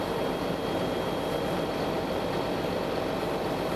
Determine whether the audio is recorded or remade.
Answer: recorded